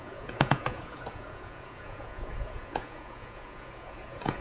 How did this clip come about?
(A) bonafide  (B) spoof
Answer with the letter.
B